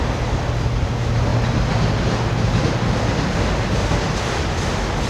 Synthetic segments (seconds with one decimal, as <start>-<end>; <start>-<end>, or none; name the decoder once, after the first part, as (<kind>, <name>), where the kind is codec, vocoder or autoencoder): none